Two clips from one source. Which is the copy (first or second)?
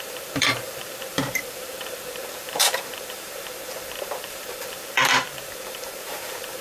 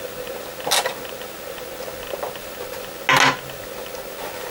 first